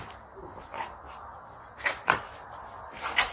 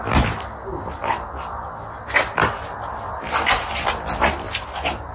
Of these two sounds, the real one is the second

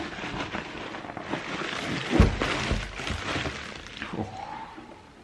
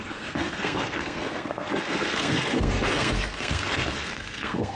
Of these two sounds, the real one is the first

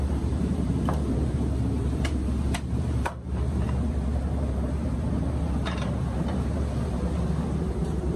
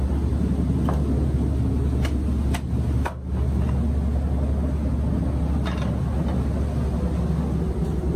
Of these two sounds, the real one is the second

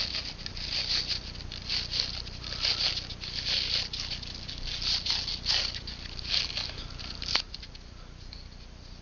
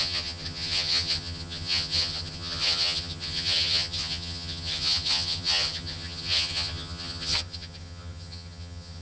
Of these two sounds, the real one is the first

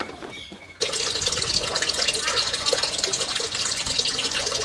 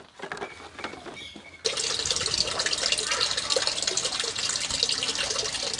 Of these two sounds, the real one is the second